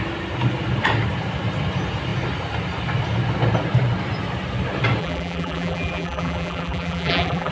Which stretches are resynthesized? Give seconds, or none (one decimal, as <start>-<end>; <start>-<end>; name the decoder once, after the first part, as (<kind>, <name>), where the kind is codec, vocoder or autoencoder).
5.0-7.5 (vocoder, BigVGAN v2)